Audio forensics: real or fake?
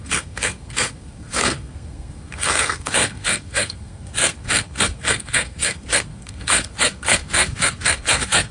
fake